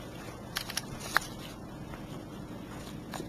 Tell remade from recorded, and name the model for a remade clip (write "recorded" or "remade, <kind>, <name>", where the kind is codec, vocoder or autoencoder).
recorded